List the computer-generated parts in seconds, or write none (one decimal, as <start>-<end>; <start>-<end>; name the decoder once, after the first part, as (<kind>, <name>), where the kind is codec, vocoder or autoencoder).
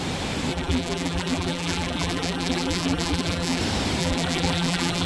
0.5-3.6 (vocoder, BigVGAN v2); 4.0-5.1